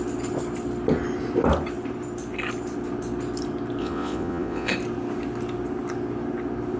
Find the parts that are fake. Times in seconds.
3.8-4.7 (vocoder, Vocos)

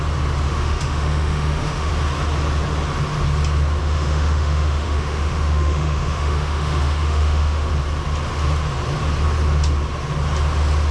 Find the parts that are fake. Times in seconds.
0.5-1.9 (autoencoder, DAC-VAE); 3.8-7.7

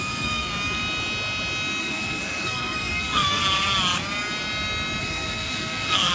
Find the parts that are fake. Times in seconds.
0.0-0.5 (codec, SNAC); 1.8-3.4; 5.0-6.1

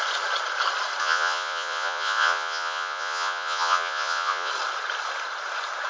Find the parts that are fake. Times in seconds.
1.0-4.5 (vocoder, Vocos)

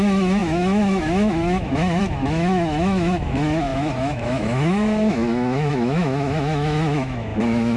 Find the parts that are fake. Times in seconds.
0.0-7.8 (autoencoder, DAC-VAE)

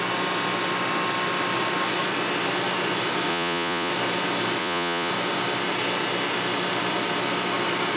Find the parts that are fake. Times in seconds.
3.3-3.9 (vocoder, Vocos); 4.6-5.1

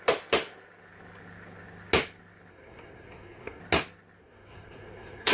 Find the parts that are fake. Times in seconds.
2.5-3.6 (codec, SNAC); 4.2-5.3